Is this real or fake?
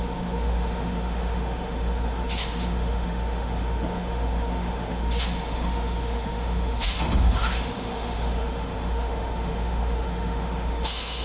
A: fake